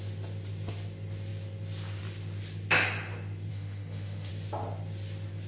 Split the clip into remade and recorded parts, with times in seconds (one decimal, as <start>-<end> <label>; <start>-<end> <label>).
0.0-3.5 recorded; 3.5-4.3 remade; 4.3-5.5 recorded